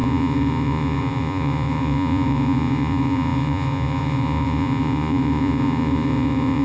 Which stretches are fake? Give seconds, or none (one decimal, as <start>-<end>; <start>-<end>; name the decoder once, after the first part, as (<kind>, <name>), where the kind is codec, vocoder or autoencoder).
0.0-6.6 (vocoder, Vocos)